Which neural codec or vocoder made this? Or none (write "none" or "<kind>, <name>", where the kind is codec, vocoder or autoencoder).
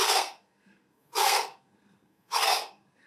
codec, SNAC